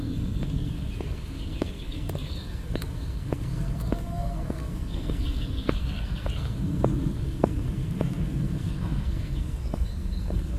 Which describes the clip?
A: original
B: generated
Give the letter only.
B